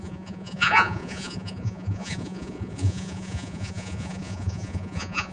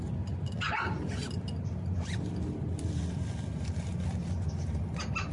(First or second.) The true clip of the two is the second